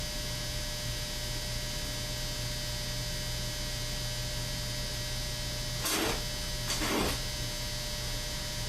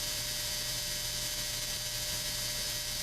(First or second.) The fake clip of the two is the second